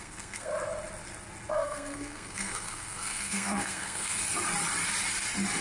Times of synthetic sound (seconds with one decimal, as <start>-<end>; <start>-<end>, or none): 0.0-0.5; 1.5-4.2